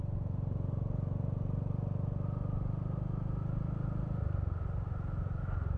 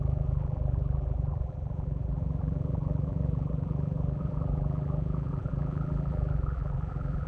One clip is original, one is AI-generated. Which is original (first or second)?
first